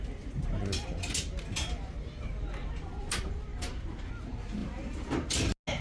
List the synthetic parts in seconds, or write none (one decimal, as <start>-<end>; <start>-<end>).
2.6-3.1; 3.5-4.1; 4.6-5.3